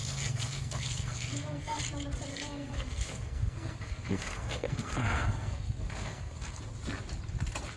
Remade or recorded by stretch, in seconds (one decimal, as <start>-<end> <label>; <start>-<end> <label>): 0.0-1.8 remade; 1.8-2.3 recorded; 2.3-6.6 remade; 6.6-7.8 recorded